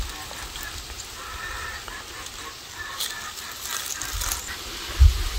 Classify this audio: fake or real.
real